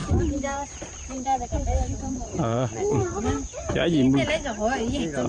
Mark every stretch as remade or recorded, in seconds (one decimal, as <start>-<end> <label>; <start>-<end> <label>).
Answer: 0.0-3.2 remade; 3.2-5.3 recorded